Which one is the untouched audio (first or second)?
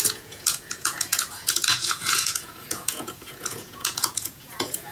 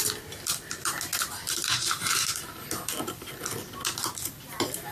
second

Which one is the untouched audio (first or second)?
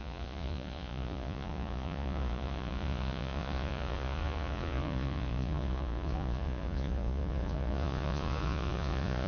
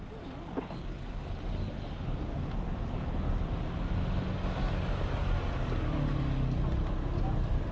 second